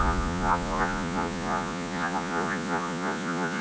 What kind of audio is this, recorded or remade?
remade